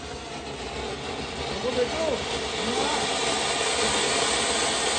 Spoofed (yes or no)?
no